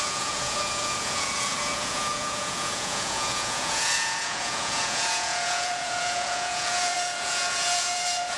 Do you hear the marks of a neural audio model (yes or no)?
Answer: yes